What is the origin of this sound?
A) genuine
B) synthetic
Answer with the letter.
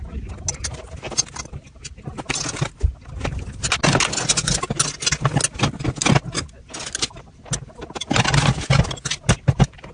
A